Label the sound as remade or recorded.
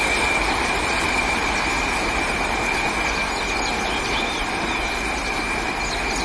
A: recorded